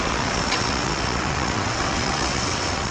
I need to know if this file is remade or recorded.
remade